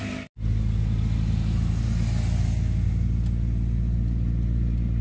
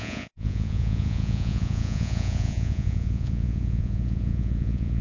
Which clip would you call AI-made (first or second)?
second